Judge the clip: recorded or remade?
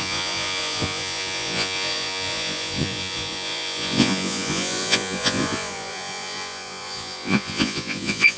remade